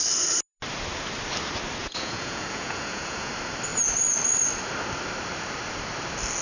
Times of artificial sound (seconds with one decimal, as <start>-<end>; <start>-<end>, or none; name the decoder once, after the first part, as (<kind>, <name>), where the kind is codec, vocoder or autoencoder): 1.8-3.3 (vocoder, Vocos)

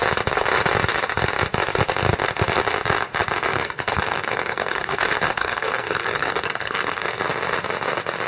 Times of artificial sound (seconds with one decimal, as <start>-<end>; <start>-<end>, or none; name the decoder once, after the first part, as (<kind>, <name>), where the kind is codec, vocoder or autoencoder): 3.5-5.0 (codec, SNAC); 5.4-7.2

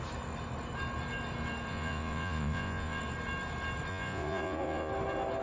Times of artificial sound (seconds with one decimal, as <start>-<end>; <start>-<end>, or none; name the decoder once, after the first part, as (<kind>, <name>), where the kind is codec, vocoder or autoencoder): 1.7-3.0 (vocoder, Vocos); 3.9-4.9

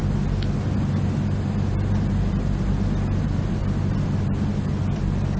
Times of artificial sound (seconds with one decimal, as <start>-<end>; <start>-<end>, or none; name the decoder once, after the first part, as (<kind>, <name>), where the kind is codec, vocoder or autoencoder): 3.2-3.6 (vocoder, BigVGAN v2); 5.0-5.4

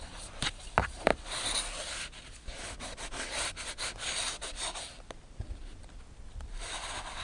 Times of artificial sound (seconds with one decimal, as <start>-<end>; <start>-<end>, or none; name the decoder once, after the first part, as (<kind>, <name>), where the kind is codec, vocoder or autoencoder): none

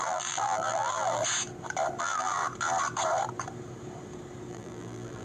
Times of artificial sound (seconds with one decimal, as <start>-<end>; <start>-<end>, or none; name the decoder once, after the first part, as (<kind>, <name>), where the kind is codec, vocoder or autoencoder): 0.0-1.2 (vocoder, BigVGAN v2); 2.0-2.4; 4.5-5.2